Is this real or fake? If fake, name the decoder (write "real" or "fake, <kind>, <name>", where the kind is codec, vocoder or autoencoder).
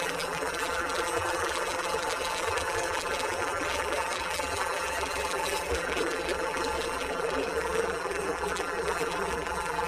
fake, vocoder, BigVGAN v2